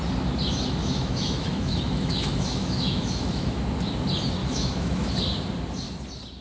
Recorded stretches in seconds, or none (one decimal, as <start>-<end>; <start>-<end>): 0.0-0.8; 3.6-4.4; 5.1-6.4